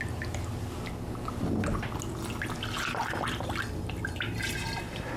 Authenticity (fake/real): real